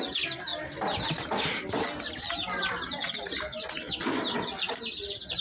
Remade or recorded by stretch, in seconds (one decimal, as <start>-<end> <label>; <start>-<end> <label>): 0.0-5.4 remade